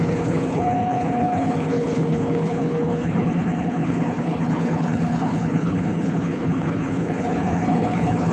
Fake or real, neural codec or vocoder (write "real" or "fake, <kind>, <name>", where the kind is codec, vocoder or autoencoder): fake, codec, HILCodec